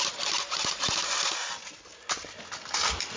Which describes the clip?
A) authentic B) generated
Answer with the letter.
A